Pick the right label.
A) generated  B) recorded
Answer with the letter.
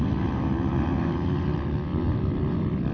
B